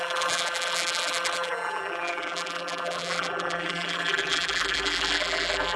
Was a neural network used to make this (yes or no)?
yes